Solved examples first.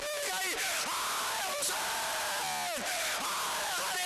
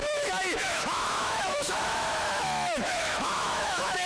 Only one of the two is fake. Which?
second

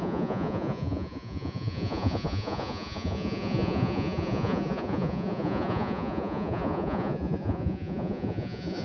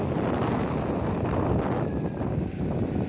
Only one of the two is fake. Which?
first